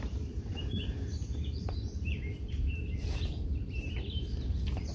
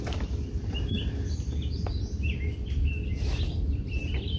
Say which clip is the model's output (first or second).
first